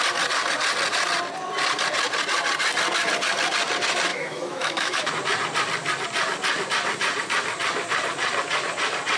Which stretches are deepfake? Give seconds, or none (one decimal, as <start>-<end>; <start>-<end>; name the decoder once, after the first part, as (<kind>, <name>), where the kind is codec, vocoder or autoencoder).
4.1-5.1 (autoencoder, DAC-VAE)